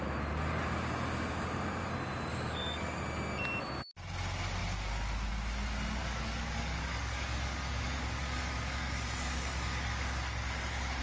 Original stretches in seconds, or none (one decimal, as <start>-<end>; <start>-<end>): 0.0-2.3; 3.0-6.0